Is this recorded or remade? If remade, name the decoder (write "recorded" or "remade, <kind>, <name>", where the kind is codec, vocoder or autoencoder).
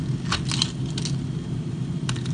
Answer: recorded